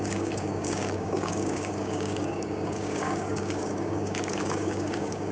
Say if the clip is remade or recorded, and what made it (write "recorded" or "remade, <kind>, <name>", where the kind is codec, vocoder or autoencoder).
remade, codec, DAC